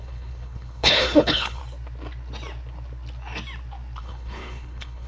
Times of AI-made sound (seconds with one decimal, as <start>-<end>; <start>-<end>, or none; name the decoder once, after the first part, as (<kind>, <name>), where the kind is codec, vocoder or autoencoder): 0.0-1.6 (codec, HILCodec); 4.0-5.1